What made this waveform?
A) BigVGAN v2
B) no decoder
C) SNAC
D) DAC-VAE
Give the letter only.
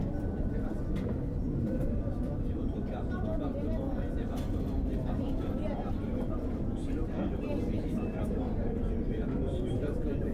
A